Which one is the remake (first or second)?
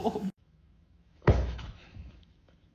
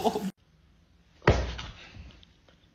first